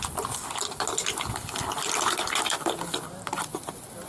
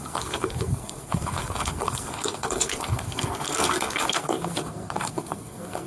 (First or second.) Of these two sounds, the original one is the first